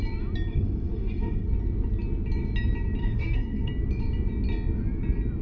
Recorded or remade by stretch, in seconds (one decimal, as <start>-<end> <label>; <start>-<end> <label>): 0.0-0.5 recorded; 0.5-1.5 remade; 1.5-3.0 recorded; 3.0-3.7 remade; 3.7-5.4 recorded